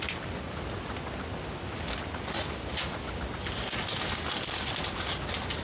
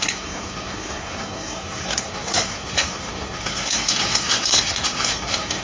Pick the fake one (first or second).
second